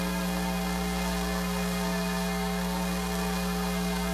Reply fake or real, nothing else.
fake